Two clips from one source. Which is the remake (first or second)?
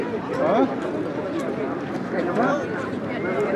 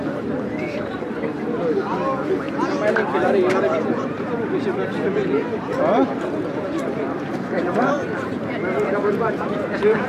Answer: second